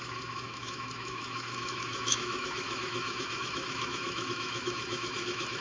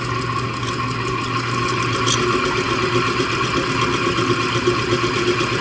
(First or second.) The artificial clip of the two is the first